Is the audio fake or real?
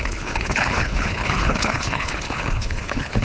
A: fake